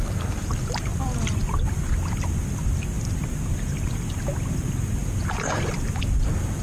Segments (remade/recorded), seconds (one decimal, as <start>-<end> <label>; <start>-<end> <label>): 0.0-0.9 recorded; 0.9-2.8 remade; 2.8-3.7 recorded; 3.7-4.3 remade; 4.3-5.0 recorded; 5.0-6.0 remade; 6.0-6.6 recorded